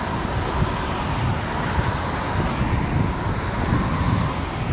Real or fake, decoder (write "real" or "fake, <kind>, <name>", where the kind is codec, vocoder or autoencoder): real